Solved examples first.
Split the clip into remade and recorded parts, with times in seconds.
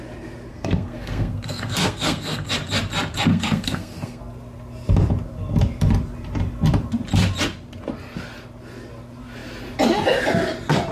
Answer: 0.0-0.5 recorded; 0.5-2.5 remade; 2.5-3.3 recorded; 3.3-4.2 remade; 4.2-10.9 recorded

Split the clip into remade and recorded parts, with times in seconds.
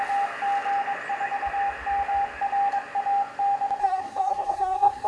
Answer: 0.0-3.8 recorded; 3.8-5.1 remade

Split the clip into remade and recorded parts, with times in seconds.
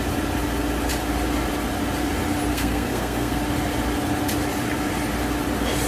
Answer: 0.0-2.5 recorded; 2.5-3.4 remade; 3.4-5.9 recorded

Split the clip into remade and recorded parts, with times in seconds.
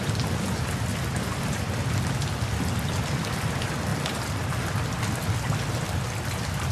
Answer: 0.0-6.7 recorded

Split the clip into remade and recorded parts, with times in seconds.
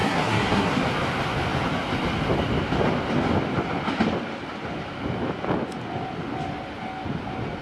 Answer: 0.0-0.8 remade; 0.8-7.6 recorded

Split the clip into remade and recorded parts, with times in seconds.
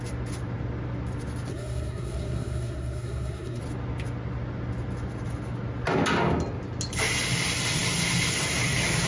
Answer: 0.0-1.5 recorded; 1.5-3.6 remade; 3.6-9.1 recorded